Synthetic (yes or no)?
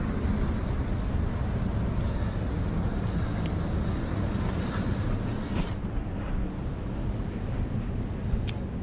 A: no